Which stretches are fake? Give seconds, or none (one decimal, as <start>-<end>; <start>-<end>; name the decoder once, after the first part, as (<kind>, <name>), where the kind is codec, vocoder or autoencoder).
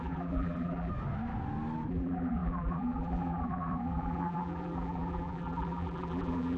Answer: 0.0-0.9 (vocoder, BigVGAN v2); 1.9-6.6